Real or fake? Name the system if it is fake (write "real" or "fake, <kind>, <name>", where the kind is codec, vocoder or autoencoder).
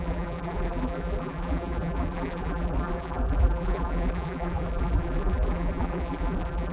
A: fake, vocoder, BigVGAN v2